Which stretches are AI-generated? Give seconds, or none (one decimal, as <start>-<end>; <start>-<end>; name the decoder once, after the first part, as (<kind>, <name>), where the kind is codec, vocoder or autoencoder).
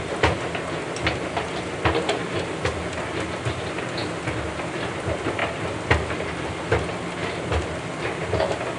none